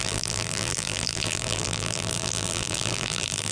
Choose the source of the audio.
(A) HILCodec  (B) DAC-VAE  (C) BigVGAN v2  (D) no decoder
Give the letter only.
C